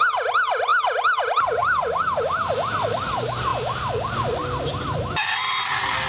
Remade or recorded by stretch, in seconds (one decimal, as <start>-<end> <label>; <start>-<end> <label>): 0.0-6.1 recorded